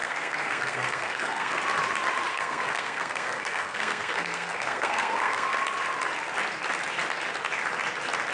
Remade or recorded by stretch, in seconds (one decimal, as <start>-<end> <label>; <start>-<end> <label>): 0.0-1.6 remade; 1.6-2.3 recorded; 2.3-5.6 remade; 5.6-8.3 recorded